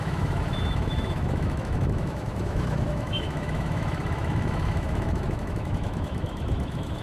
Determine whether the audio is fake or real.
fake